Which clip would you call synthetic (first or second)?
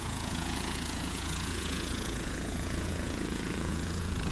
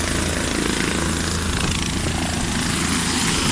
first